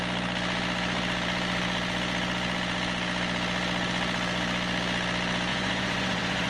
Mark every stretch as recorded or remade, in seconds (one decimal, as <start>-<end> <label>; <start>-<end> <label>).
0.0-5.5 recorded; 5.5-6.5 remade